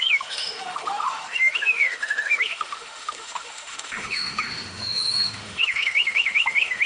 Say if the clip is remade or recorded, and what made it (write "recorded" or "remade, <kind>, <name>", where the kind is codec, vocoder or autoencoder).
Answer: remade, autoencoder, DAC-VAE